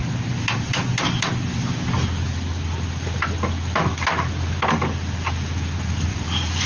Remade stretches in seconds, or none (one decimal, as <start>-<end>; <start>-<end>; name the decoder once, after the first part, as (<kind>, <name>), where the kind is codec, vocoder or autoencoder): 0.0-1.3 (vocoder, BigVGAN v2); 6.1-6.7